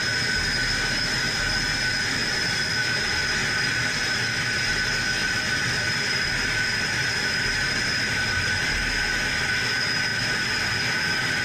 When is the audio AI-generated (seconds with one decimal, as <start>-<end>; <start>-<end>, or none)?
2.2-3.0; 3.4-4.4; 5.2-8.8